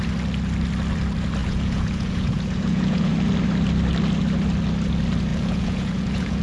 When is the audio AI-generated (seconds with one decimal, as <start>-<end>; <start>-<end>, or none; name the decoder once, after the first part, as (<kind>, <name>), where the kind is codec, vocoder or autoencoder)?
1.4-3.1 (vocoder, Vocos); 5.3-6.4